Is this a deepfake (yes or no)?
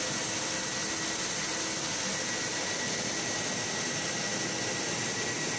no